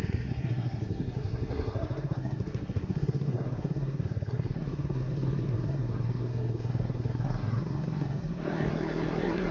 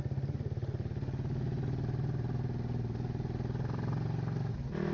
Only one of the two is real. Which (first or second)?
second